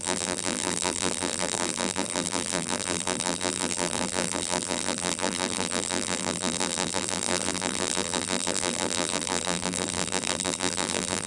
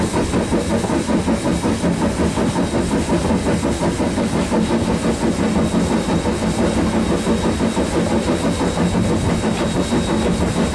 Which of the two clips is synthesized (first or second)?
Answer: first